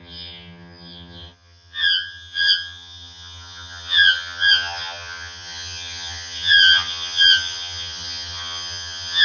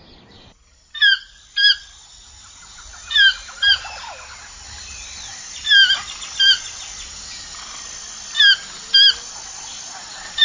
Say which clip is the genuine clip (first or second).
second